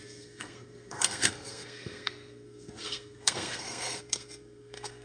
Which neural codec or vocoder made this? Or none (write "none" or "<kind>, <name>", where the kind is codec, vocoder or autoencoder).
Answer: codec, SNAC